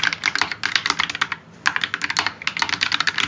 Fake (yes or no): no